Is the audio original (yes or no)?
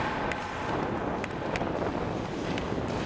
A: yes